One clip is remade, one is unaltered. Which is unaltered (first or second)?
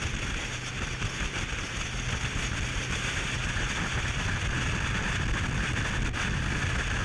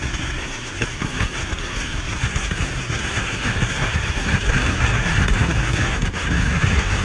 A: first